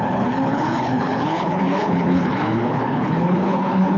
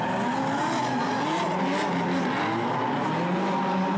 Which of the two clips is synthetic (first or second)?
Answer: first